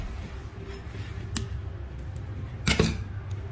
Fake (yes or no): no